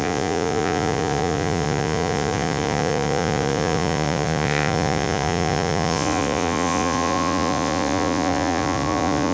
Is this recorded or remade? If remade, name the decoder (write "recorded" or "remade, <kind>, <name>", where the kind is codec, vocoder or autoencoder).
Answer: remade, vocoder, Vocos